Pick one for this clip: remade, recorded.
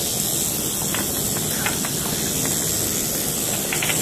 recorded